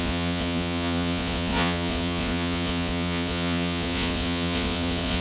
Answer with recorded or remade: remade